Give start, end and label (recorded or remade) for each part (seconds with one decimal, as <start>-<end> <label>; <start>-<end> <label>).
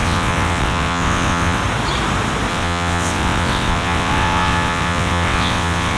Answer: 0.0-1.6 remade; 1.6-2.5 recorded; 2.5-6.0 remade